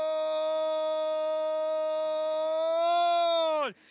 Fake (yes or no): no